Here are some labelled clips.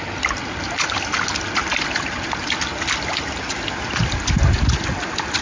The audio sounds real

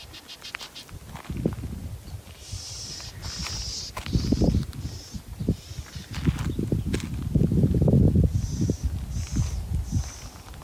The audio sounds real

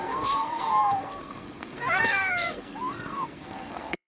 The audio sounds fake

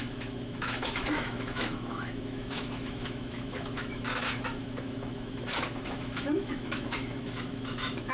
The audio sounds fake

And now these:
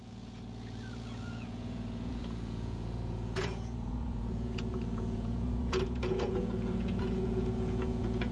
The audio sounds fake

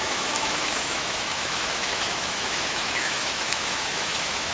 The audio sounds fake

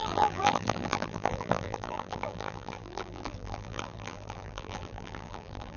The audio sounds fake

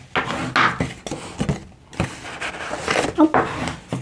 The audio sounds real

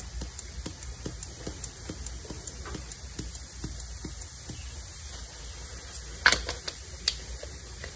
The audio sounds real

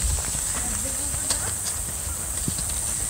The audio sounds real